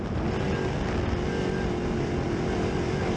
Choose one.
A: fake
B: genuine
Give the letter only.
B